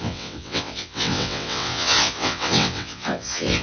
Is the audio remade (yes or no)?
yes